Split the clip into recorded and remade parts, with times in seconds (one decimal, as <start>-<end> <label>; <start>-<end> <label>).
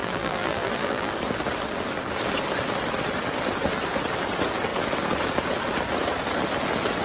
0.0-1.1 remade; 1.1-7.0 recorded